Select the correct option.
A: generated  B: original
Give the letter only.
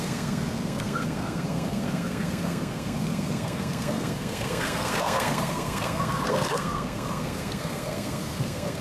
A